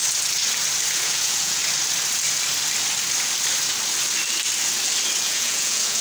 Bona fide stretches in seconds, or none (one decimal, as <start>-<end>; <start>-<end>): 0.0-0.9; 1.6-5.2